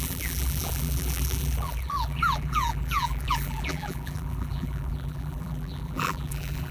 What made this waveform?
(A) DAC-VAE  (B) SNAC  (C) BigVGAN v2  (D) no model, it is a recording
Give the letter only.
C